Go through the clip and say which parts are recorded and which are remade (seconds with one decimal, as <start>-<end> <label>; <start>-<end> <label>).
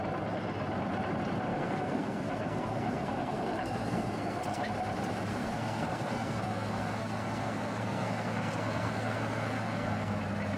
0.0-1.5 recorded; 1.5-4.7 remade; 4.7-5.3 recorded; 5.3-10.2 remade; 10.2-10.6 recorded